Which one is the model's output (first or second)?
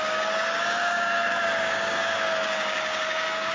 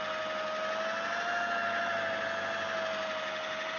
first